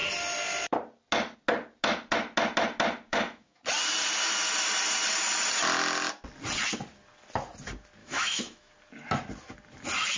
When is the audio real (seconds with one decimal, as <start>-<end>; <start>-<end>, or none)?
0.0-3.1; 3.6-8.0; 8.7-10.2

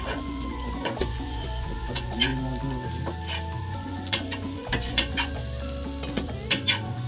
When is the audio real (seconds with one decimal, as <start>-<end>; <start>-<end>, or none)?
2.3-3.6; 5.4-6.1

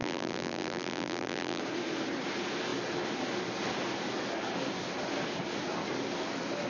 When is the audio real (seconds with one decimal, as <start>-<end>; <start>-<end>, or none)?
1.6-6.7

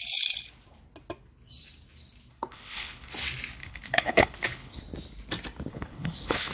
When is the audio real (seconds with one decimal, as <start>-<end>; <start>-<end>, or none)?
0.0-2.3; 3.1-3.6; 4.8-5.7

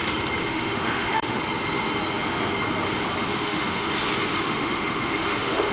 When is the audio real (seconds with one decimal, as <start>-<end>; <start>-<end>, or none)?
0.0-0.4; 1.4-3.2; 3.9-4.3

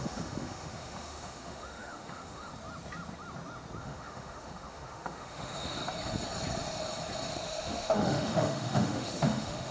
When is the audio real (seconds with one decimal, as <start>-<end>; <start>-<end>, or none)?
2.5-3.8; 5.8-7.3